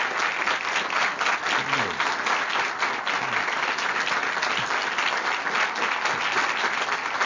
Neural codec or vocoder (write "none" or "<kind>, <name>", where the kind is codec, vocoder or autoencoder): none